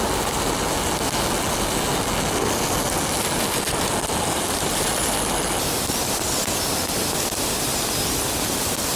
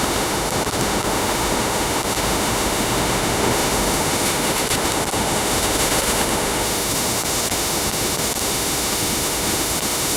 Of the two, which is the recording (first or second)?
first